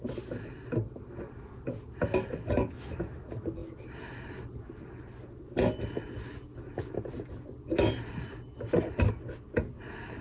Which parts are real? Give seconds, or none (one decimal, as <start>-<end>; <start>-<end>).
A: 0.0-10.2